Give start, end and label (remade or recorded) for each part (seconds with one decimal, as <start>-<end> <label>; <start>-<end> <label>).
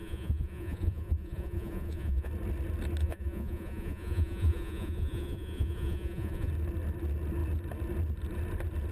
0.0-2.3 remade; 2.3-3.0 recorded; 3.0-6.5 remade; 6.5-8.9 recorded